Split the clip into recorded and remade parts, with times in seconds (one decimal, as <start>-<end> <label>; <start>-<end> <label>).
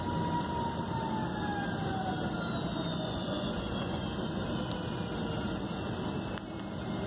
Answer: 0.0-2.9 recorded; 2.9-4.0 remade; 4.0-7.1 recorded